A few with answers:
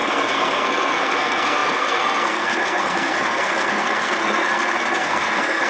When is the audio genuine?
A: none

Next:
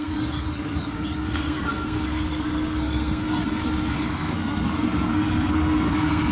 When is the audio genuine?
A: none